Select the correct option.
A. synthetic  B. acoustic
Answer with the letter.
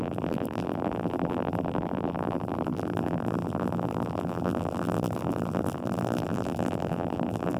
A